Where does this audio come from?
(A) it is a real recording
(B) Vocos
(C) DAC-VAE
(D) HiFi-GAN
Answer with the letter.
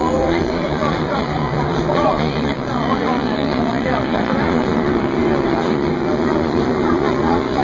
B